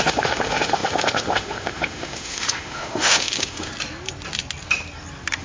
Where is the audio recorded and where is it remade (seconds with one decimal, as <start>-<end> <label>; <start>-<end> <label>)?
0.0-3.7 remade; 3.7-5.4 recorded